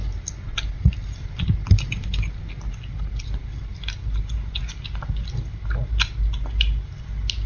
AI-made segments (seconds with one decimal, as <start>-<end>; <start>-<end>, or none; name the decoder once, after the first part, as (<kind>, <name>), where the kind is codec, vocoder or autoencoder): none